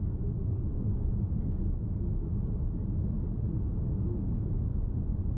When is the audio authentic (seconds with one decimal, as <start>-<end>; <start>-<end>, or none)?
0.0-0.4; 1.1-4.7